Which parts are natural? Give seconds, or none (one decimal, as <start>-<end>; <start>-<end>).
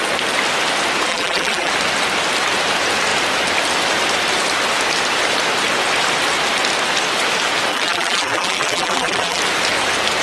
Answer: 0.0-1.1; 1.7-7.7; 9.4-10.2